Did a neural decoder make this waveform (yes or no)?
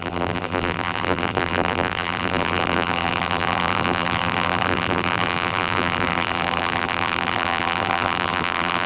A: yes